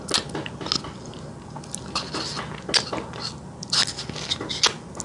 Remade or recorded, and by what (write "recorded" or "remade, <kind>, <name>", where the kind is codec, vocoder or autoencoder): recorded